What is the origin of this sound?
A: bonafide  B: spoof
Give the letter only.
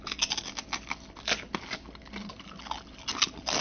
A